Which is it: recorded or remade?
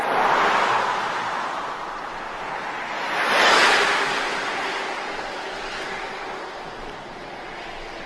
recorded